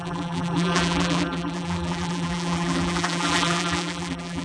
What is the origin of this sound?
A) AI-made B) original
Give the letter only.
A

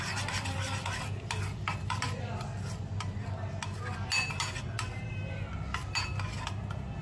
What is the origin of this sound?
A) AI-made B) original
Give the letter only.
B